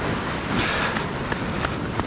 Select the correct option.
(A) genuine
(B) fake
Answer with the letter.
A